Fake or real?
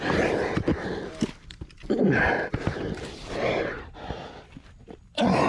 fake